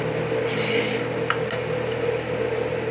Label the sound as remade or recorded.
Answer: recorded